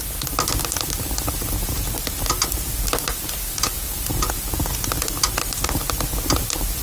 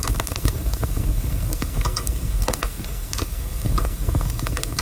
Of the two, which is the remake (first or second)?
second